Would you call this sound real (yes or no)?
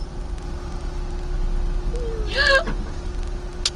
yes